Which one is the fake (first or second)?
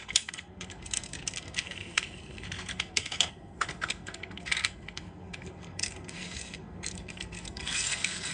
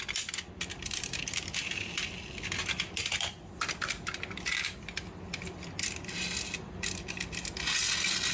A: first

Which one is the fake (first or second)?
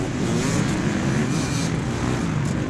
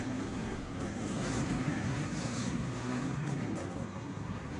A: second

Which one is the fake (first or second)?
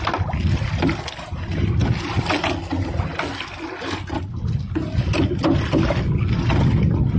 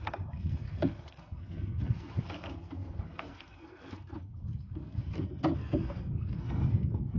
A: second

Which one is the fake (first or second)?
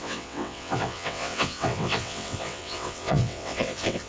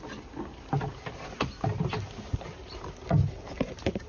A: first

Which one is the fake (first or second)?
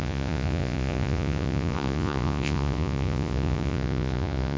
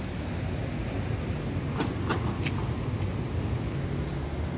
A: first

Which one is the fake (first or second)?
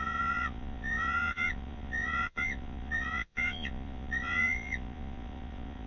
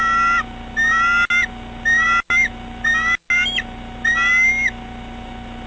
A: first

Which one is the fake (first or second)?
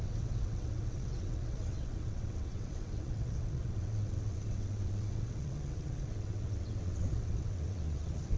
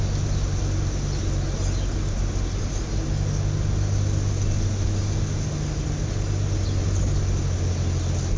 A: first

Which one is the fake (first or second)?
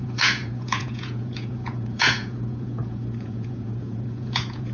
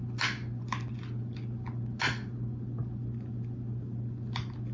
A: first